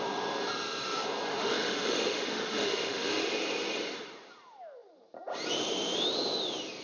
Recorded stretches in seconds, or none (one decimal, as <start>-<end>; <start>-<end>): 0.0-1.3; 3.3-6.8